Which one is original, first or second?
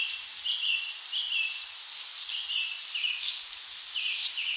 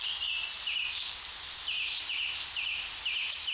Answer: second